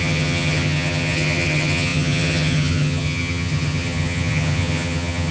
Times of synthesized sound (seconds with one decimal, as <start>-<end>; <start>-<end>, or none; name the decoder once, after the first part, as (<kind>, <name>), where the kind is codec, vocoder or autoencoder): 0.0-5.3 (vocoder, HiFi-GAN)